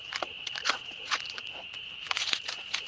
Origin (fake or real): fake